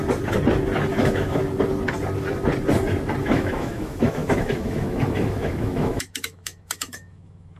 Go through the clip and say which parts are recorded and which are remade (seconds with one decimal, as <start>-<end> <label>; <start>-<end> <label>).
0.0-0.9 recorded; 0.9-1.4 remade; 1.4-3.2 recorded; 3.2-7.6 remade